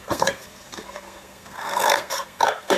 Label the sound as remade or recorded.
remade